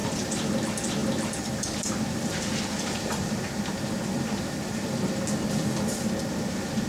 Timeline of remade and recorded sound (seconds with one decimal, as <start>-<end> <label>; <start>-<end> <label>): 0.0-0.6 remade; 0.6-1.0 recorded; 1.0-5.1 remade; 5.1-6.9 recorded